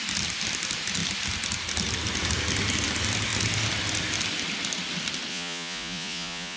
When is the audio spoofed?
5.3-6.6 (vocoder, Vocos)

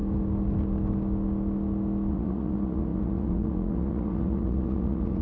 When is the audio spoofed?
2.1-5.2 (vocoder, Vocos)

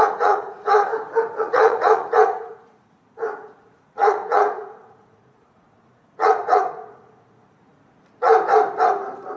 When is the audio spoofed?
0.0-0.9 (vocoder, Vocos); 1.4-8.3